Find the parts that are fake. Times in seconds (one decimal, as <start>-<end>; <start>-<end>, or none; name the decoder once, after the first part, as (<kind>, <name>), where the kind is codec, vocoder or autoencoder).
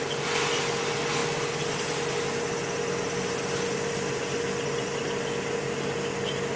none